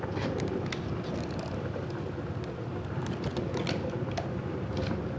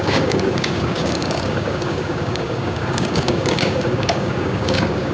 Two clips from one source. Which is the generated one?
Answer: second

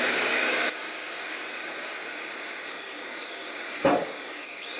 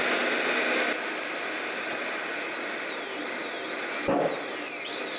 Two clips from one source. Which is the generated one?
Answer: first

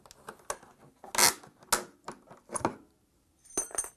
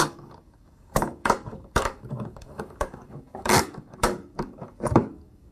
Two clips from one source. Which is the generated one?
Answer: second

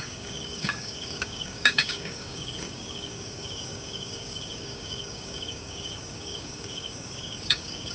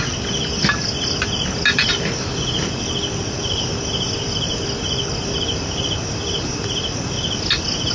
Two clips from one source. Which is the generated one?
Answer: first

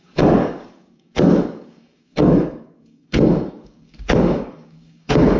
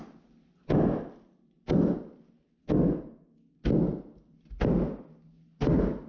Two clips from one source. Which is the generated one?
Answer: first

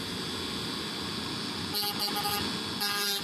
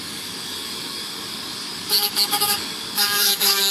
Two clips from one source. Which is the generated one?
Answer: second